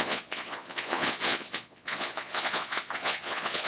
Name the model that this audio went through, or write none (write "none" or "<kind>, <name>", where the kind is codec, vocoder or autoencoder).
vocoder, Vocos